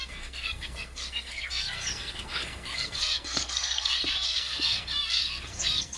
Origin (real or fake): fake